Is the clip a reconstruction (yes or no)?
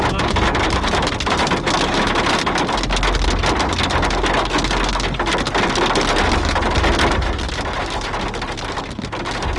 no